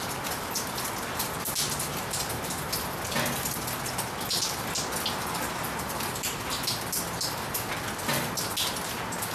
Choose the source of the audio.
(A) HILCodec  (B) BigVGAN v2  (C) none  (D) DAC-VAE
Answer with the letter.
C